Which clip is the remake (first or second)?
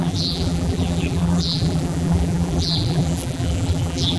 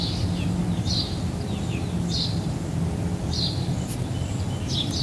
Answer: first